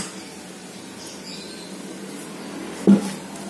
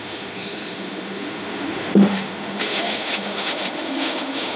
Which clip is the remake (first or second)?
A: second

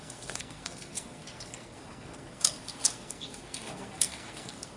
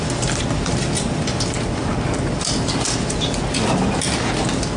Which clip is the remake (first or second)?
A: first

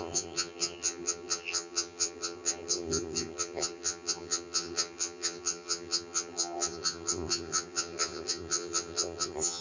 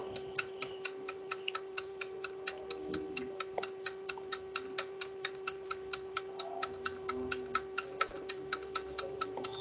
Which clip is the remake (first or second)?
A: first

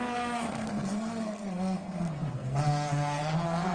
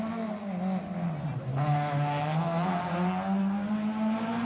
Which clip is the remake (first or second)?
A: first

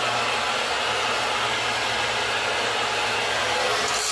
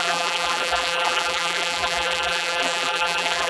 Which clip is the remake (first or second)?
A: second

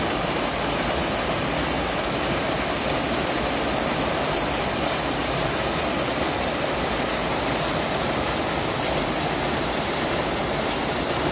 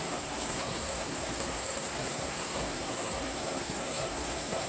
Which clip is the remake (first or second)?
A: second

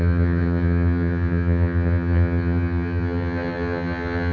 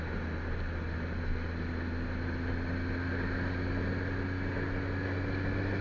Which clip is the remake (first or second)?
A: first